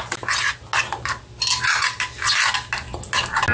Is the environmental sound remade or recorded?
recorded